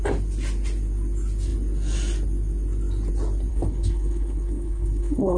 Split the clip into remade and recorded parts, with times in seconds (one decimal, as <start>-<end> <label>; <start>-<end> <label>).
0.0-3.5 recorded; 3.5-5.4 remade